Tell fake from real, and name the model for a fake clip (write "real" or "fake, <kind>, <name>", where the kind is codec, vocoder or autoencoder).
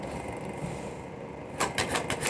real